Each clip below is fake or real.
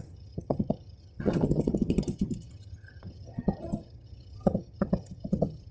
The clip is fake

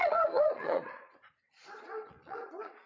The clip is fake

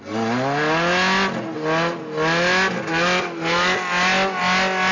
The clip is real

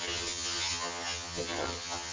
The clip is fake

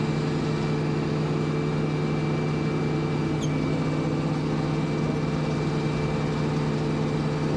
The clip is real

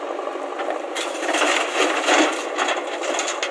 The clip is real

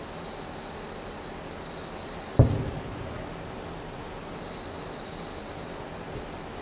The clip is real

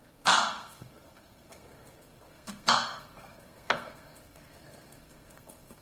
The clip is fake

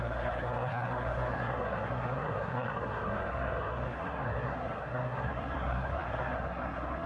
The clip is fake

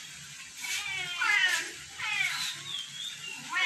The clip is real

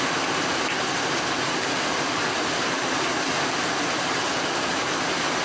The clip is real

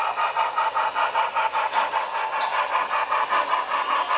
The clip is real